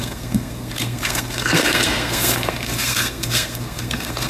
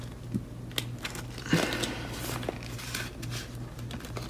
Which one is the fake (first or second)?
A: first